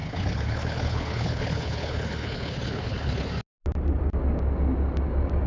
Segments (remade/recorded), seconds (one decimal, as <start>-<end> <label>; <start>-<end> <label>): 0.0-3.3 remade; 3.3-5.5 recorded